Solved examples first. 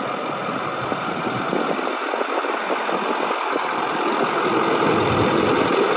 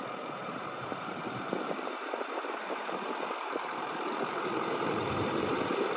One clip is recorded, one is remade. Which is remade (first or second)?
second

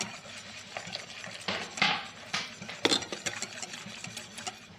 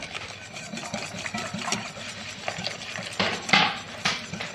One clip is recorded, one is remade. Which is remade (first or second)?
second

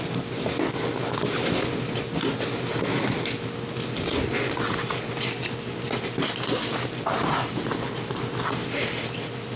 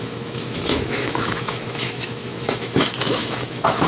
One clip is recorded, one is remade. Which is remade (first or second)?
second